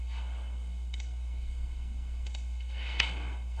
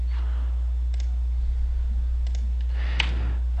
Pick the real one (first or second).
second